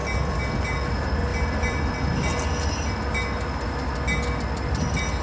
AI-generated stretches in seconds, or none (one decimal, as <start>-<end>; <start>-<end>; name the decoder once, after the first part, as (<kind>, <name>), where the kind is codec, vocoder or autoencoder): none